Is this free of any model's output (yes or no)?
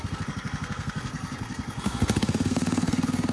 no